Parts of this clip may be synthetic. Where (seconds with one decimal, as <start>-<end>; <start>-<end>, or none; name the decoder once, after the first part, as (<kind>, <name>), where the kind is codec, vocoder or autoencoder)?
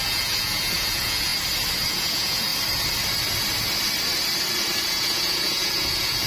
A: 0.0-1.3 (vocoder, Vocos); 1.9-2.5; 4.9-6.3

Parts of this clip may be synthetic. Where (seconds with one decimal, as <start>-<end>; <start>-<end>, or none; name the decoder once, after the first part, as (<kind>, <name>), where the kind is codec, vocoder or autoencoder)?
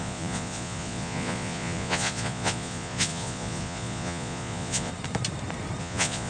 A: 0.0-4.9 (vocoder, Vocos); 5.8-6.3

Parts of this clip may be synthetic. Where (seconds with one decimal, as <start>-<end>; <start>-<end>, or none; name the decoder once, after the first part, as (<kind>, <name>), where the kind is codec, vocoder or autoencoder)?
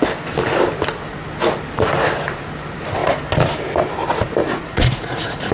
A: 4.4-5.5 (vocoder, Vocos)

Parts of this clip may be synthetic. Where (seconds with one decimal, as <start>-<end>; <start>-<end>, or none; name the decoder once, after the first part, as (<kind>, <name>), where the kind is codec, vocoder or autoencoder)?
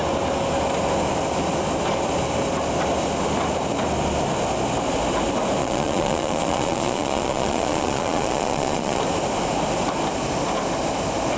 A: 5.6-9.0 (vocoder, Vocos)